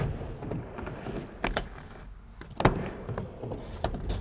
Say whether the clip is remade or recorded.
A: recorded